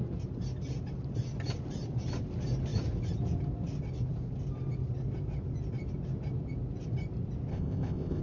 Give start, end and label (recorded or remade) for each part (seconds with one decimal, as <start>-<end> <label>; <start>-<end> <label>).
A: 0.0-7.5 recorded; 7.5-8.2 remade

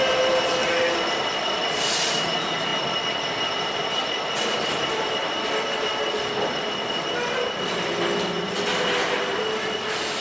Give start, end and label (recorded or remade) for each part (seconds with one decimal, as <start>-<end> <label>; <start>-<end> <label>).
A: 0.0-10.2 recorded

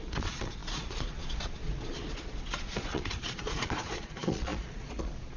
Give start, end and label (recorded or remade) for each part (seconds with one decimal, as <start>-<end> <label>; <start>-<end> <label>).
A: 0.0-5.4 remade

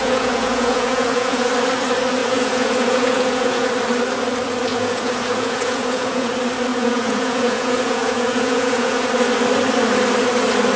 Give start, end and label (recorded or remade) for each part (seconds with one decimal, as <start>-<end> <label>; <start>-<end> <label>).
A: 0.0-1.5 remade; 1.5-2.2 recorded; 2.2-3.7 remade; 3.7-4.7 recorded; 4.7-6.3 remade; 6.3-6.7 recorded; 6.7-9.1 remade; 9.1-10.8 recorded